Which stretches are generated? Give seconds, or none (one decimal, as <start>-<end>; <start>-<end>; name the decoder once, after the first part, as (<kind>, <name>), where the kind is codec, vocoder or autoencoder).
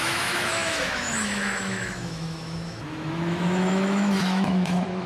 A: 0.0-5.1 (autoencoder, DAC-VAE)